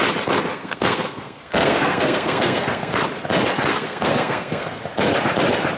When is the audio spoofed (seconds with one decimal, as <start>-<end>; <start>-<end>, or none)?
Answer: 0.5-2.9; 3.7-4.8